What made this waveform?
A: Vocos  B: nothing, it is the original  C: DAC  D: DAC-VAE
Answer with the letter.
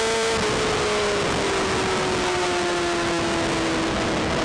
B